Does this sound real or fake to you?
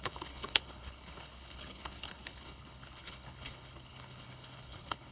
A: fake